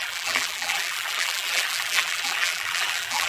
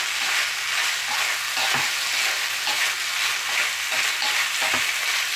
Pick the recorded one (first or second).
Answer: second